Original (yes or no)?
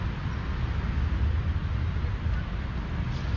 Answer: yes